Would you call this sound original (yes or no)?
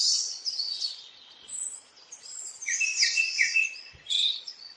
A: no